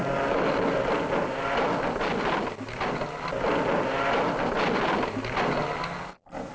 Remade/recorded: recorded